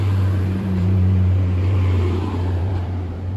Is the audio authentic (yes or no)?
no